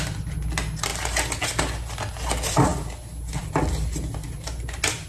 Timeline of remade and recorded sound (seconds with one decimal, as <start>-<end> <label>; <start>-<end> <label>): 0.0-5.1 recorded